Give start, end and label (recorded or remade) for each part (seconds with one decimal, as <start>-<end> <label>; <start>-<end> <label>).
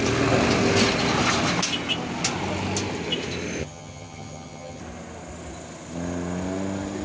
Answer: 0.0-3.6 recorded; 3.6-4.8 remade; 4.8-7.0 recorded